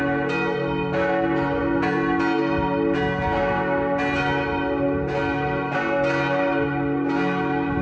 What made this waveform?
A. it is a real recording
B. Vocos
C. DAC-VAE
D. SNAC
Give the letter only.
A